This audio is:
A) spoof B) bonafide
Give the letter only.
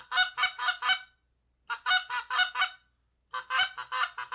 B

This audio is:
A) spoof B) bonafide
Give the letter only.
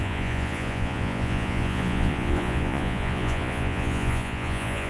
A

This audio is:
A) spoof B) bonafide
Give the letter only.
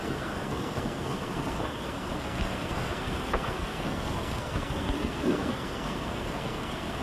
A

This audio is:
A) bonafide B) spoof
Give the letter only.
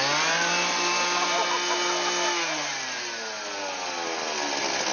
A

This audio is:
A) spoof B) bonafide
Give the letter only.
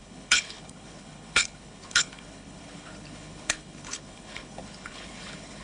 A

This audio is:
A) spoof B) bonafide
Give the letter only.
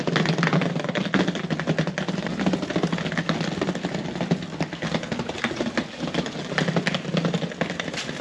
B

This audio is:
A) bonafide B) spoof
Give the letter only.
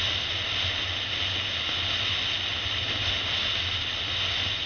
A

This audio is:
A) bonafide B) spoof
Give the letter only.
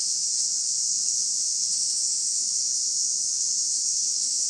B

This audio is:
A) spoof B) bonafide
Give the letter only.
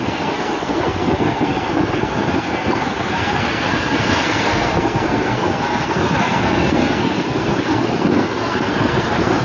A